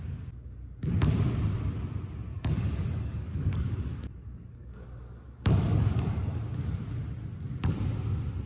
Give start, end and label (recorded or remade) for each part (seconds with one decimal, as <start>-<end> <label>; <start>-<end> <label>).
0.0-2.3 recorded; 2.3-6.4 remade; 6.4-8.5 recorded